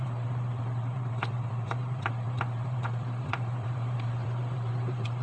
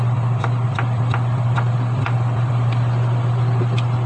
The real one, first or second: second